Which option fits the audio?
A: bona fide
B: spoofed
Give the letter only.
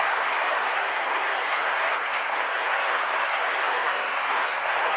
B